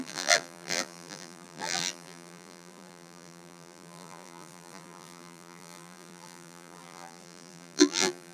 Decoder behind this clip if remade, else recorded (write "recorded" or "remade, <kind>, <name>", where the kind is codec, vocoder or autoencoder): remade, vocoder, BigVGAN v2